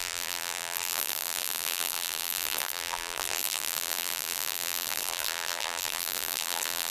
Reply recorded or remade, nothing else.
remade